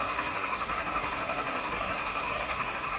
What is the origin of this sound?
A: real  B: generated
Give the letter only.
B